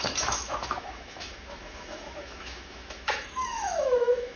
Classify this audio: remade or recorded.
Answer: remade